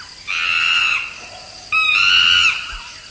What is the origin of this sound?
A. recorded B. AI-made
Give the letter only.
A